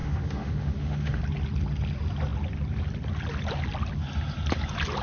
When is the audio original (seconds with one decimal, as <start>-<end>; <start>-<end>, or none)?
1.2-5.0